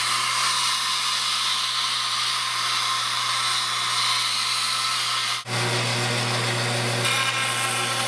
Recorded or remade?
recorded